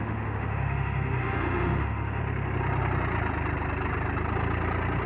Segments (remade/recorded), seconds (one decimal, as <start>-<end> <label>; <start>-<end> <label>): 0.0-2.2 remade; 2.2-5.1 recorded